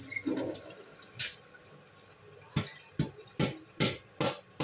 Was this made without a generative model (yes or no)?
yes